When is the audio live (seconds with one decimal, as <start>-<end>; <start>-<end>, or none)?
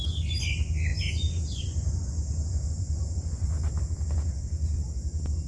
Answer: 0.0-0.9; 3.5-5.5